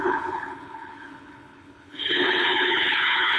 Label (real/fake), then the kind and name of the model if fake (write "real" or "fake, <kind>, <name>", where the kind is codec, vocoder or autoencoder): fake, codec, HILCodec